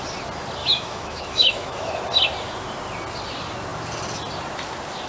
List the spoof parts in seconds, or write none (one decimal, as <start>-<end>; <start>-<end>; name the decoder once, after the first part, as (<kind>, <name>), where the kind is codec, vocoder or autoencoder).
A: 0.6-1.9 (autoencoder, DAC-VAE)

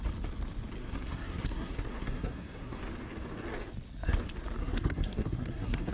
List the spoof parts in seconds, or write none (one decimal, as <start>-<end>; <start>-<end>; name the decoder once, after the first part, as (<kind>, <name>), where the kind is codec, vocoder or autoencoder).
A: 0.8-2.8 (codec, SNAC); 4.6-5.9

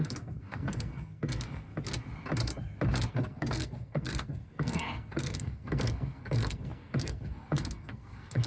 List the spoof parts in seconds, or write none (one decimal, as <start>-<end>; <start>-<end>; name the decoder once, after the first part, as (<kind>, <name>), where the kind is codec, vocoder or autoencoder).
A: 0.0-1.7 (codec, SNAC); 3.1-8.5

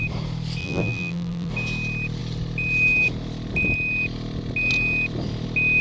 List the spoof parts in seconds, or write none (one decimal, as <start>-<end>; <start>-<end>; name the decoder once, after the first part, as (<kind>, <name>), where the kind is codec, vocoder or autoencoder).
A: 0.6-1.5 (vocoder, BigVGAN v2)